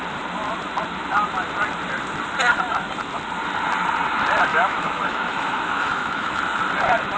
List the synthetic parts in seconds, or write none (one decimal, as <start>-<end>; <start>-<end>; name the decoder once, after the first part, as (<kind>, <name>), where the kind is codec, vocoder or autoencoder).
4.5-6.4 (autoencoder, DAC-VAE)